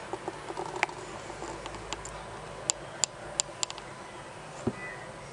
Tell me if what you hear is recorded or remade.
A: recorded